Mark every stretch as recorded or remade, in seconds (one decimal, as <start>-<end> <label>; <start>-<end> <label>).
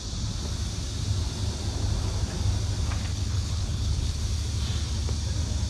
0.0-3.1 recorded; 3.1-4.2 remade; 4.2-5.7 recorded